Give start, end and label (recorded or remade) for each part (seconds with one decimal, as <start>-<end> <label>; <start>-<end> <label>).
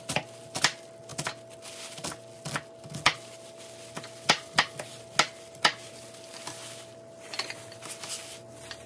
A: 0.0-8.9 recorded